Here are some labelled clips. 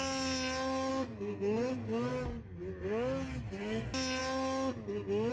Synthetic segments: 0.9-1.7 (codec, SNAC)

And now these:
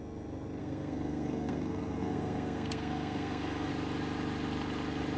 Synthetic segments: 0.6-3.7 (codec, SNAC)

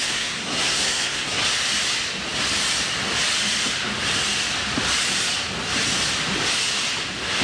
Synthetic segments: 0.0-1.4 (codec, SNAC)

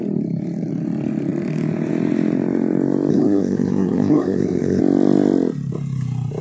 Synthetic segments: 3.1-4.8 (codec, SNAC)

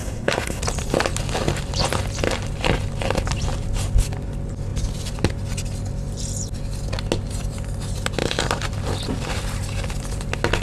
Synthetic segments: 0.0-0.6 (codec, SNAC)

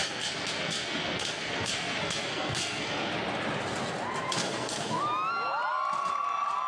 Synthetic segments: 0.0-3.1 (codec, SNAC); 4.4-5.0